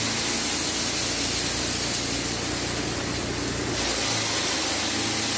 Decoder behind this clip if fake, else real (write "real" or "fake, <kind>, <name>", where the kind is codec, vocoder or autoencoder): real